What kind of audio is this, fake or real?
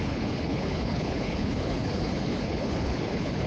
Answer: fake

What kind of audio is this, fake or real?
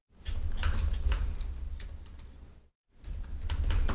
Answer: real